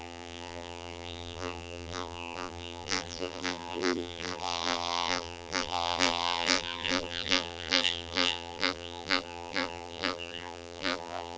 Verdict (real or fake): fake